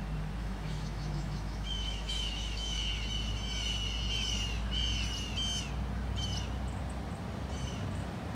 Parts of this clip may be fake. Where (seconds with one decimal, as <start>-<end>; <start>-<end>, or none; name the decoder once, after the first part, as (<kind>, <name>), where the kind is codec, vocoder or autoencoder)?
0.4-2.9 (autoencoder, DAC-VAE)